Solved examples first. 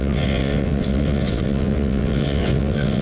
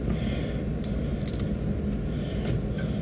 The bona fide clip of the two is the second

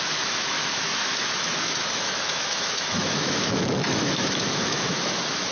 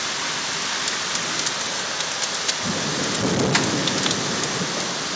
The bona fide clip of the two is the second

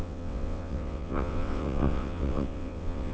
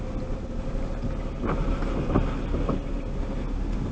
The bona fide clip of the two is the second